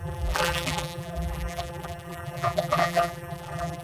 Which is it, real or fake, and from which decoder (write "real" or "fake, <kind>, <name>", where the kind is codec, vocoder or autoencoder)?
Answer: fake, vocoder, BigVGAN v2